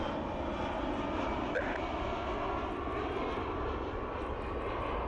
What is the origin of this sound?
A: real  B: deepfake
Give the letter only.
A